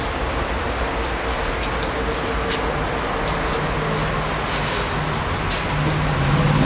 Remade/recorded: recorded